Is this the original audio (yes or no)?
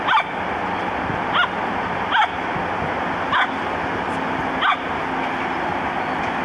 yes